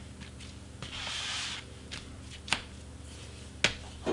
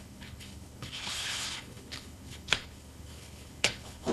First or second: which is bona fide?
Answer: first